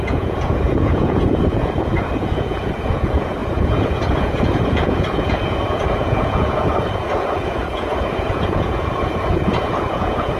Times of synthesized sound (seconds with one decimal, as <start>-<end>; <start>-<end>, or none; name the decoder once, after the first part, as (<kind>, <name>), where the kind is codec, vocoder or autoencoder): 0.0-10.4 (vocoder, Vocos)